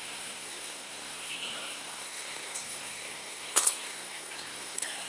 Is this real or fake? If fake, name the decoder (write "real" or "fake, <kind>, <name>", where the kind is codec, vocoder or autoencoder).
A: fake, codec, SNAC